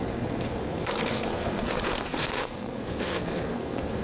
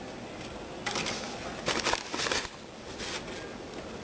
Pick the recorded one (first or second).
second